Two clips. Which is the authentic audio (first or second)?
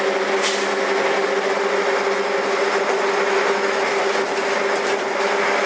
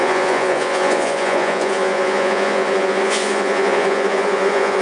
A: first